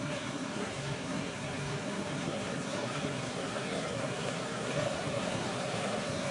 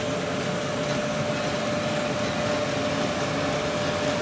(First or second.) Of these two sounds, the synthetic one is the first